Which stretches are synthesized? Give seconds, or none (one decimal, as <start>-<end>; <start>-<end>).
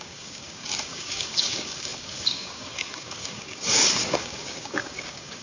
0.0-5.4